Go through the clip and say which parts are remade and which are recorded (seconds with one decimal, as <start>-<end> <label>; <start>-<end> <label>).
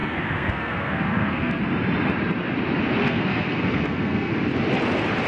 0.0-1.6 remade; 1.6-3.0 recorded; 3.0-4.3 remade; 4.3-5.3 recorded